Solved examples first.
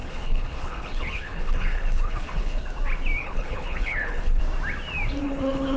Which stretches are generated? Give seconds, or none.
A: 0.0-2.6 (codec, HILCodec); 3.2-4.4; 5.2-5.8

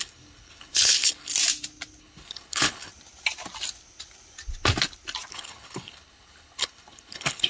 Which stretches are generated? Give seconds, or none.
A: 0.0-1.3 (codec, HILCodec); 2.0-2.9; 5.3-7.5

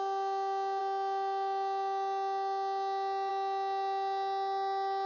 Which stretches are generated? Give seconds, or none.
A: none

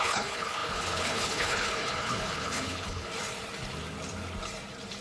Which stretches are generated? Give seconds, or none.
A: 0.0-3.1 (codec, HILCodec)